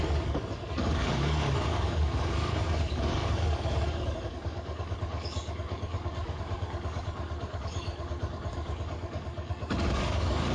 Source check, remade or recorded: remade